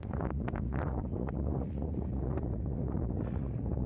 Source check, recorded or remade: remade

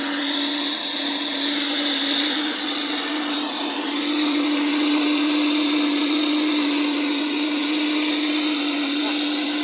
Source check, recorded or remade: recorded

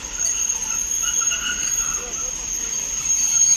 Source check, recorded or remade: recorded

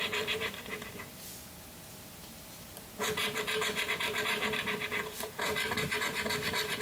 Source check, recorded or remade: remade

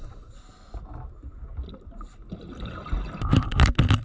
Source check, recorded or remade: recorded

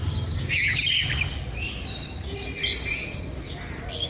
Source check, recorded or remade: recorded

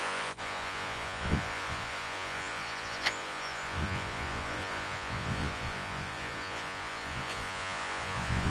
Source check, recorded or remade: remade